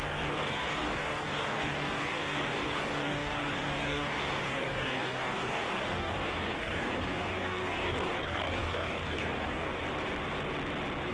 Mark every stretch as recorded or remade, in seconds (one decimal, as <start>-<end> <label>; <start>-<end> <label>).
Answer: 0.0-9.8 remade; 9.8-11.1 recorded